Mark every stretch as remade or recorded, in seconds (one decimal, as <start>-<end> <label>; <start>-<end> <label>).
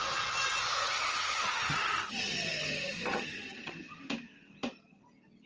0.0-0.8 recorded; 0.8-4.0 remade; 4.0-5.5 recorded